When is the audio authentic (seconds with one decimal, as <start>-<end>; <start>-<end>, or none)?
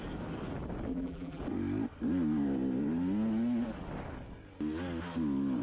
0.0-0.9; 1.4-5.6